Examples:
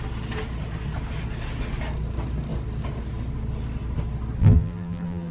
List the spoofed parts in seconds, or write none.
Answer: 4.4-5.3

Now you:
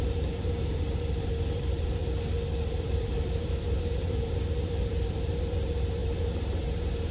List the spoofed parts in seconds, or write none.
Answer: 0.0-2.0; 2.6-7.1

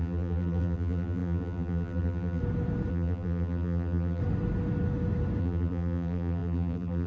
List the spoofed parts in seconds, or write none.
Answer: 0.0-2.4; 2.9-4.2; 5.4-7.1